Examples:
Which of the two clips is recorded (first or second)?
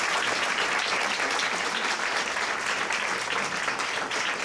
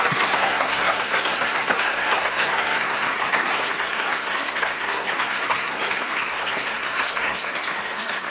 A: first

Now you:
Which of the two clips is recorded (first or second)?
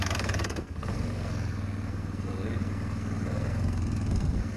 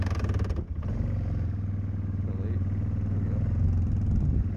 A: second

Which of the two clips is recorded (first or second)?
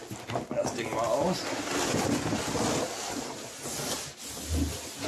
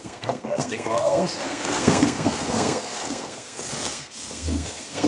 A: first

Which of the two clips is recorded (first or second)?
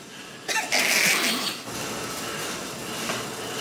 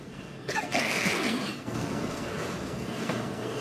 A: first